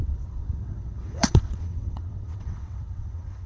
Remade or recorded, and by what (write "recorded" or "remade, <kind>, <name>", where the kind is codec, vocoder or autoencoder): remade, vocoder, WaveNeXt